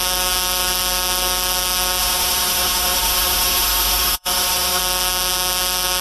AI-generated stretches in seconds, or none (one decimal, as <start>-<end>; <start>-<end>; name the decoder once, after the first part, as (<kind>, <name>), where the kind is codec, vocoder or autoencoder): 2.0-4.8 (autoencoder, DAC-VAE)